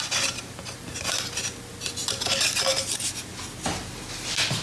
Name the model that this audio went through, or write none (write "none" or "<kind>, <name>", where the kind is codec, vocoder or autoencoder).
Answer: none